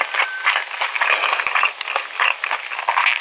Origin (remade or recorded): recorded